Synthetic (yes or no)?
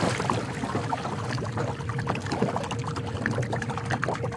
yes